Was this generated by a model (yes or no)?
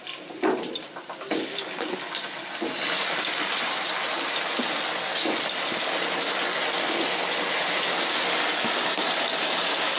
no